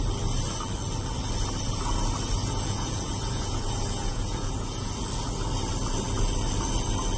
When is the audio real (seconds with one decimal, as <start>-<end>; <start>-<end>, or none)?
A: 0.0-2.4; 4.9-7.2

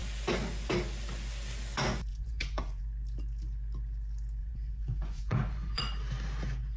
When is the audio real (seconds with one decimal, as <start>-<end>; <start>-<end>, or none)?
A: 0.0-2.1; 2.8-4.4; 5.8-6.8

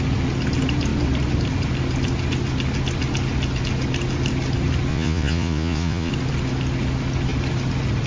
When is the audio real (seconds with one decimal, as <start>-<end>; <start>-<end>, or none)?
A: 0.0-4.9; 6.1-8.1